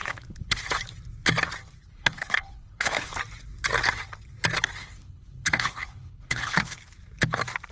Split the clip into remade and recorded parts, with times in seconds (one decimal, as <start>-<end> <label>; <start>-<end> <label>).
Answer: 0.0-0.6 remade; 0.6-1.8 recorded; 1.8-3.1 remade; 3.1-4.8 recorded; 4.8-6.8 remade; 6.8-7.7 recorded